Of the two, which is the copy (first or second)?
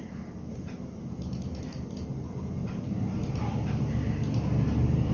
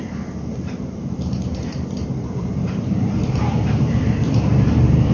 second